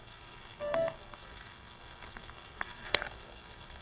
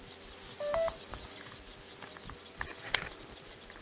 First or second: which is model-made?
first